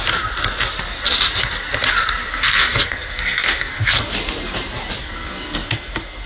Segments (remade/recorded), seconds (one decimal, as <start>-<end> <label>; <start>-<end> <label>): 0.0-2.3 recorded; 2.3-4.1 remade; 4.1-5.0 recorded; 5.0-6.3 remade